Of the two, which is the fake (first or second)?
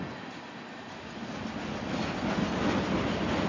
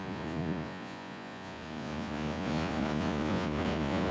second